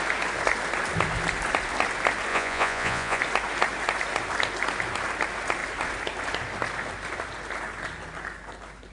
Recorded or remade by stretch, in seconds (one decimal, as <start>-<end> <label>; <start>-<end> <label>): 0.0-2.3 recorded; 2.3-3.2 remade; 3.2-8.9 recorded